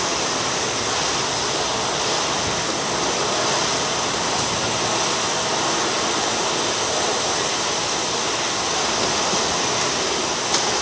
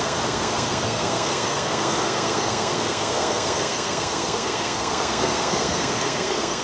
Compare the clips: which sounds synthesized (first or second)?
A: second